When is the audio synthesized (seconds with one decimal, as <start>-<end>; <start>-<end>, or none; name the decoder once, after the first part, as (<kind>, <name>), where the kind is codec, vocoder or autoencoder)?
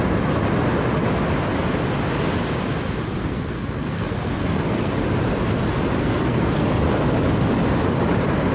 3.1-4.9 (codec, SNAC); 6.0-6.7